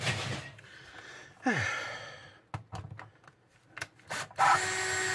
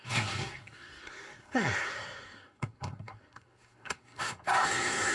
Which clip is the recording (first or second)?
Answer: first